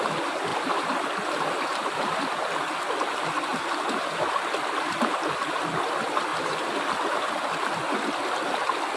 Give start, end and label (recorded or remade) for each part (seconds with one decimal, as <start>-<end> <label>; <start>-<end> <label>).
0.0-0.5 recorded; 0.5-2.0 remade; 2.0-3.5 recorded; 3.5-5.2 remade; 5.2-6.3 recorded; 6.3-6.8 remade; 6.8-9.0 recorded